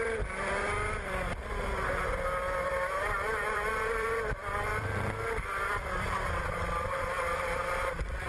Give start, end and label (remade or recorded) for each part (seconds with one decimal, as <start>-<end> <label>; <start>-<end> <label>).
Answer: 0.0-8.3 remade

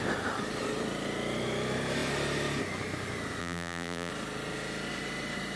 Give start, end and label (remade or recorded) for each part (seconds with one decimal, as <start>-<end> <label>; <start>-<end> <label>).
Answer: 0.0-3.4 recorded; 3.4-4.1 remade; 4.1-5.6 recorded

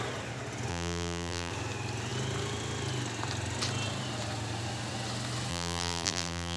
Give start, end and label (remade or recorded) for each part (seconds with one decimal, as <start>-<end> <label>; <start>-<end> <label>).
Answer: 0.0-0.7 recorded; 0.7-1.5 remade; 1.5-5.5 recorded; 5.5-6.6 remade

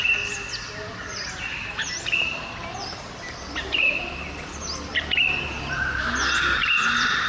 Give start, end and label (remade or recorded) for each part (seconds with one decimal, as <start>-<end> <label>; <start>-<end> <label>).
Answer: 0.0-0.9 recorded; 0.9-3.0 remade; 3.0-4.9 recorded; 4.9-6.1 remade; 6.1-7.3 recorded